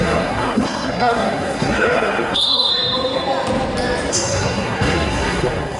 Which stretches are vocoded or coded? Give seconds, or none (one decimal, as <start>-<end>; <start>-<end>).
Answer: 0.0-2.7; 4.1-5.8